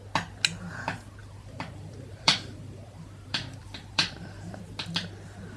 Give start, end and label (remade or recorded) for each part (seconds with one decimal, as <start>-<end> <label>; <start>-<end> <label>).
0.0-1.2 recorded; 1.2-4.6 remade; 4.6-5.6 recorded